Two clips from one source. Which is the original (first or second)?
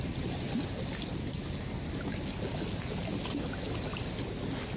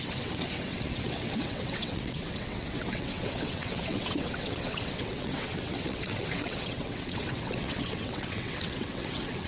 first